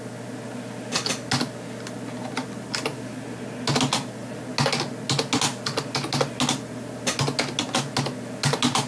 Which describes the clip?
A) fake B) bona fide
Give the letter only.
B